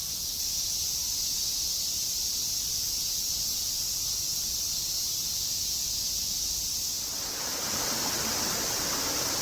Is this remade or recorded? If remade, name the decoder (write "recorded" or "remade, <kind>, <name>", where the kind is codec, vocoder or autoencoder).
recorded